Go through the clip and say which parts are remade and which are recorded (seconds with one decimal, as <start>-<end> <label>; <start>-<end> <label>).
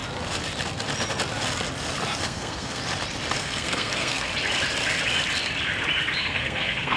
0.0-2.2 recorded; 2.2-2.8 remade; 2.8-3.4 recorded; 3.4-4.3 remade; 4.3-6.2 recorded; 6.2-7.0 remade